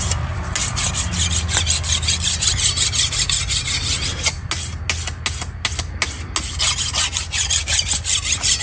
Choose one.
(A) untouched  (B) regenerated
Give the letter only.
A